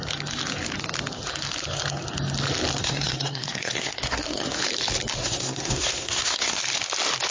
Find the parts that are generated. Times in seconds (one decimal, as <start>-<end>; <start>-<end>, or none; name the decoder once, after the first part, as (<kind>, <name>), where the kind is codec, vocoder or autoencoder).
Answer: 2.8-4.6 (codec, SNAC); 5.2-6.6